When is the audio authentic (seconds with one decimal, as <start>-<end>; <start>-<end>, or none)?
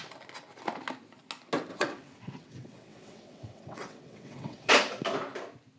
0.0-1.7; 4.7-5.8